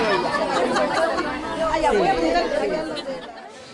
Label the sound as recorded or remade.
recorded